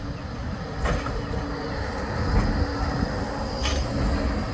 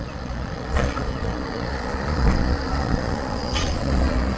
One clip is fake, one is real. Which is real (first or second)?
first